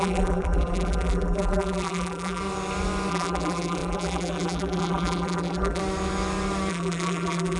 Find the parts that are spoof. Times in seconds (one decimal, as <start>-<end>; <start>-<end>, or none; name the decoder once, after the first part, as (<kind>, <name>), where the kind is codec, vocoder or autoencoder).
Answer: 0.0-2.4 (vocoder, BigVGAN v2); 3.1-5.8; 6.7-7.6